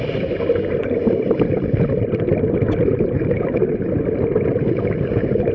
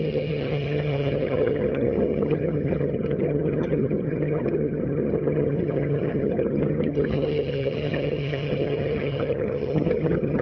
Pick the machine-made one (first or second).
second